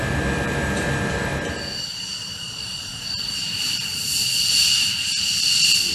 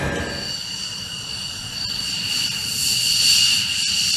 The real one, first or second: second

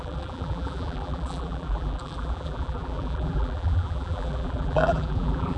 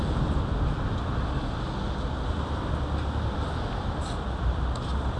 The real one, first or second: second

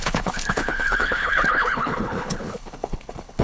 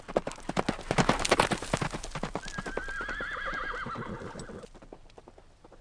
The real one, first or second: second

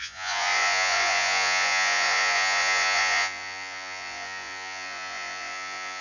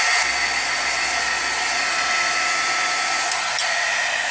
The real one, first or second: second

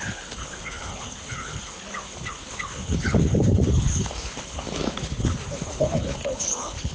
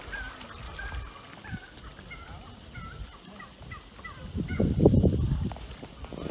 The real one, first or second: second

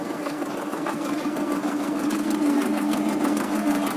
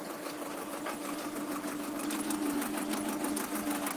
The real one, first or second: second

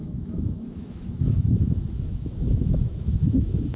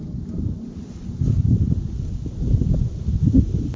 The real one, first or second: second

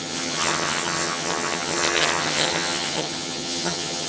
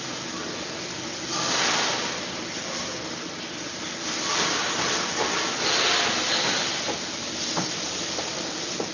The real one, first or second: second